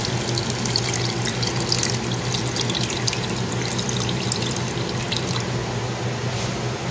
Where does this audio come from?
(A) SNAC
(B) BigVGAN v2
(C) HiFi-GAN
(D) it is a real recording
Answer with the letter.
D